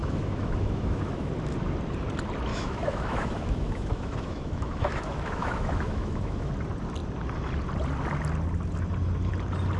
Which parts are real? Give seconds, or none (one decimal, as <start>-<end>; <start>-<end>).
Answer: 1.3-2.5; 6.5-9.8